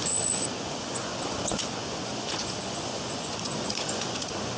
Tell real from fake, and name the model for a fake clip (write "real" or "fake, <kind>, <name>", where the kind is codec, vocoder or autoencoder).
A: fake, vocoder, Vocos